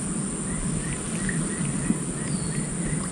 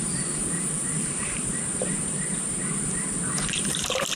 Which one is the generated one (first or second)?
second